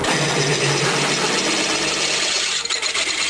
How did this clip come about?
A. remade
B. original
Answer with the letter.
B